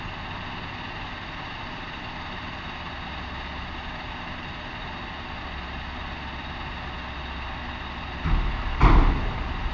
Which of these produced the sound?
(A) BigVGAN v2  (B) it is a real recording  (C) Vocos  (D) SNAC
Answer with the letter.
B